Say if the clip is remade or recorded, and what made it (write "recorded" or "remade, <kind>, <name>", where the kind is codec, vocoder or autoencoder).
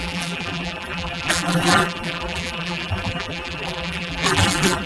remade, vocoder, BigVGAN v2